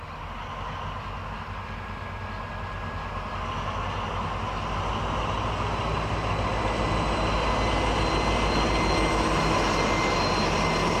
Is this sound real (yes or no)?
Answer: yes